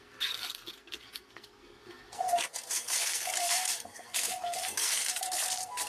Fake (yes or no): yes